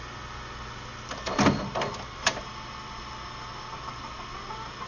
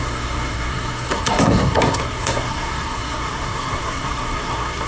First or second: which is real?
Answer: first